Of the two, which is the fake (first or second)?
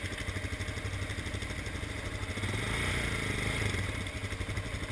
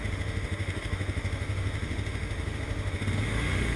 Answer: second